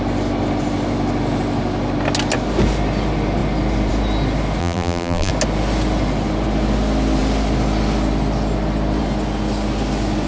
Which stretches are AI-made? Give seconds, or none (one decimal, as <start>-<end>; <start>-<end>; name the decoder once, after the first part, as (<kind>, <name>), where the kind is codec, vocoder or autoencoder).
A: 4.6-5.3 (vocoder, BigVGAN v2)

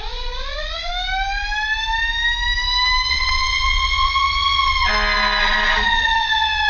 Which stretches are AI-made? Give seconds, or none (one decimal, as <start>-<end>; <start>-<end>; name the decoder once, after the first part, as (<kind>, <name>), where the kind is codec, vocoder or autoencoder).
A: 0.0-0.9 (vocoder, Vocos); 3.1-4.9; 5.4-6.7

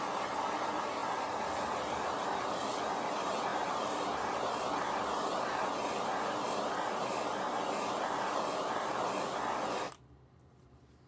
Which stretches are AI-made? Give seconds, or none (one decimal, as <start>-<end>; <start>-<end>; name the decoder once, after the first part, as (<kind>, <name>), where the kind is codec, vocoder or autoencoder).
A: none

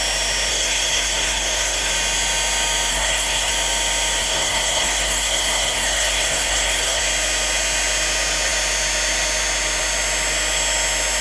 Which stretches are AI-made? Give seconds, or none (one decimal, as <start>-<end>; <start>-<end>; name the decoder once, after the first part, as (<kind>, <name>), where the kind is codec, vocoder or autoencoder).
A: 0.5-1.9 (codec, SNAC); 2.9-3.5; 4.2-7.0

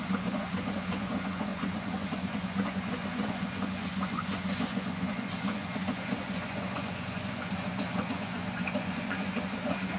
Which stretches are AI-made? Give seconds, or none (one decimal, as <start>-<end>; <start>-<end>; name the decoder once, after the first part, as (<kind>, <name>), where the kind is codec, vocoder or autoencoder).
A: 0.0-10.0 (vocoder, Vocos)

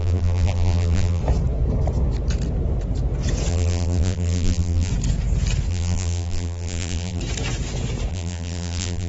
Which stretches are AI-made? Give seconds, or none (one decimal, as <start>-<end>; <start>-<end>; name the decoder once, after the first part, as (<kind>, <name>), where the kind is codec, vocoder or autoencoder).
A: 0.0-1.2 (vocoder, BigVGAN v2); 3.5-4.9; 5.7-7.2; 8.1-9.1

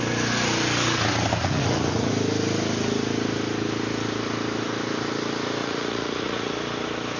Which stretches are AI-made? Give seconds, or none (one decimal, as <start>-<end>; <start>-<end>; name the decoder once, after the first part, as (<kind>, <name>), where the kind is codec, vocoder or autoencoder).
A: 1.4-2.1 (vocoder, Vocos); 5.6-6.5

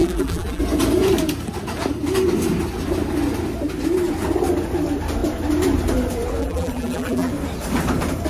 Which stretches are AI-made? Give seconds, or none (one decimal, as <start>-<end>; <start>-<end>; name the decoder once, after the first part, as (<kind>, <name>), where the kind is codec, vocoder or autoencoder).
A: 0.0-0.6 (vocoder, BigVGAN v2); 6.4-7.3